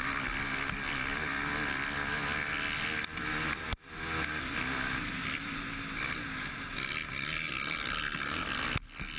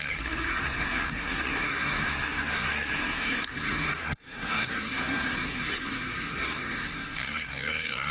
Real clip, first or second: first